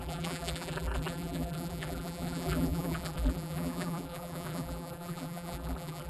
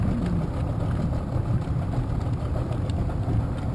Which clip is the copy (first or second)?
first